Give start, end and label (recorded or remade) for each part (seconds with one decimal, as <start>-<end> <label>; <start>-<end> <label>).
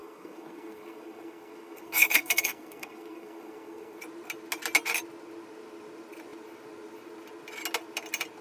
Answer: 0.0-4.0 remade; 4.0-8.4 recorded